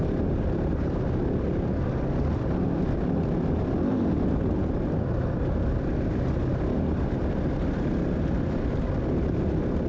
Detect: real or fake real